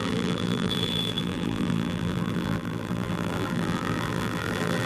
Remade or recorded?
remade